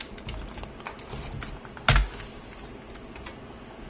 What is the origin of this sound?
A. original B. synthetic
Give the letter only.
A